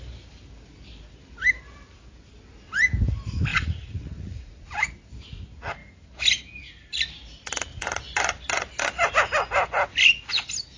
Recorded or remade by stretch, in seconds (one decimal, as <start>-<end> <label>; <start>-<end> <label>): 0.0-3.5 recorded; 3.5-4.9 remade; 4.9-10.8 recorded